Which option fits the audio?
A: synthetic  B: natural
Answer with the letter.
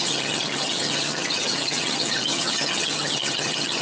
A